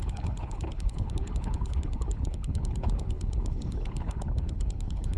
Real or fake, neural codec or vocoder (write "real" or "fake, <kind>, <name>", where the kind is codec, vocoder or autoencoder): fake, codec, HILCodec